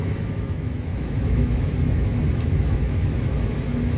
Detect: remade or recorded remade